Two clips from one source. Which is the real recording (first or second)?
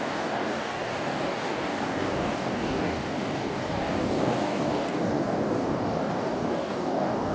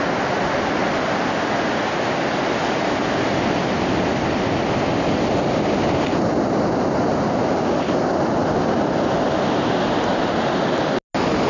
second